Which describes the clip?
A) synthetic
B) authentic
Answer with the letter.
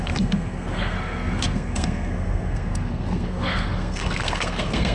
A